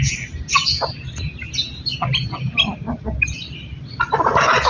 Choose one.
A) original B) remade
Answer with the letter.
A